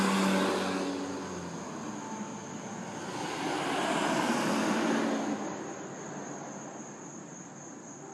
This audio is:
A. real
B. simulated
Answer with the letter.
A